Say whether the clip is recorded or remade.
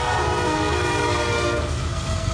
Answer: remade